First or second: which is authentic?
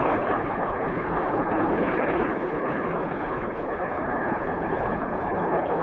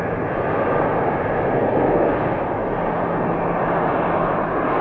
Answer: second